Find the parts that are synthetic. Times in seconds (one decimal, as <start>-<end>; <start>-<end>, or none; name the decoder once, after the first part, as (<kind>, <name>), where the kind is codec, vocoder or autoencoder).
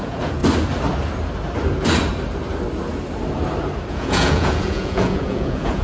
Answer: 0.0-0.4 (vocoder, Vocos); 3.9-5.8